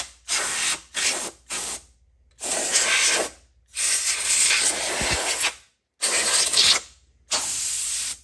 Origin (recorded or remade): recorded